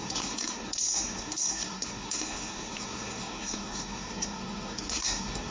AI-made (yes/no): yes